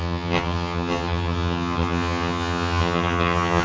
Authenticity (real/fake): fake